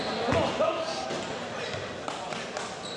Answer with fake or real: real